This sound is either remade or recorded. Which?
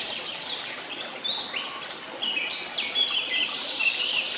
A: remade